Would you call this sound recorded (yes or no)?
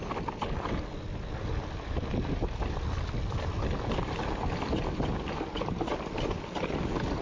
yes